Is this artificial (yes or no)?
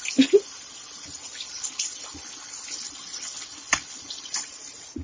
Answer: no